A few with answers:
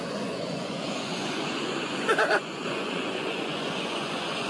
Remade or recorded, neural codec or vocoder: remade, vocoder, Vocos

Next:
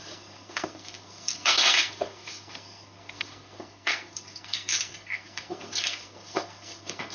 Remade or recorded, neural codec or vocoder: remade, codec, SNAC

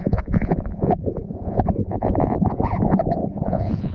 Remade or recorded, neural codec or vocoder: remade, vocoder, Vocos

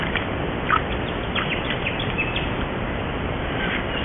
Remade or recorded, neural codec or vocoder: recorded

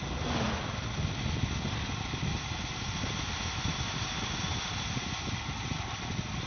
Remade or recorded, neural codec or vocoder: recorded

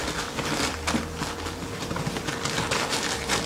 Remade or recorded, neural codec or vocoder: recorded